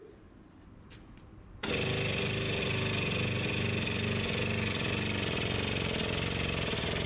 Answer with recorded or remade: recorded